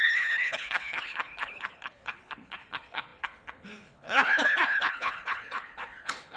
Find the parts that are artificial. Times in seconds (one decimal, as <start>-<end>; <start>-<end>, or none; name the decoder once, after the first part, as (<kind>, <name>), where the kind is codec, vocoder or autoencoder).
0.0-6.4 (codec, HILCodec)